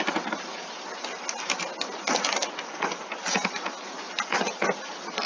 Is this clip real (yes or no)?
yes